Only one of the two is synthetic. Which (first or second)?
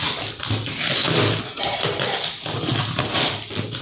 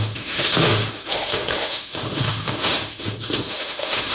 second